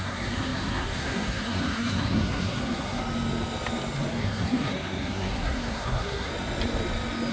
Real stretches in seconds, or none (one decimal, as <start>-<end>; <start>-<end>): 3.0-4.2; 6.3-7.3